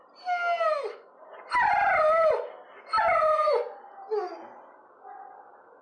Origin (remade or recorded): recorded